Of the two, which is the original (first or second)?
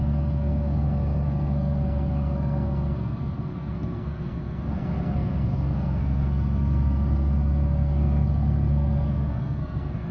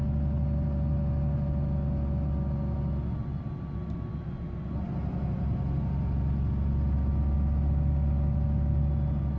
second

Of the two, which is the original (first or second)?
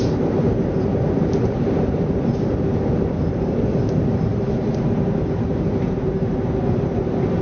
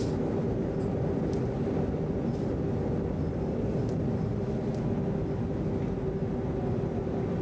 second